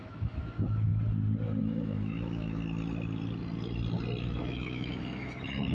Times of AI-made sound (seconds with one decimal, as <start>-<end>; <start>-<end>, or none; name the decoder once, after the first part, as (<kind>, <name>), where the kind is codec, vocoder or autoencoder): 0.0-0.9 (autoencoder, DAC-VAE); 1.6-2.6; 4.2-5.7